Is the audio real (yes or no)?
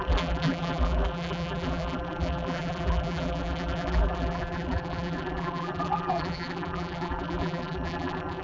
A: no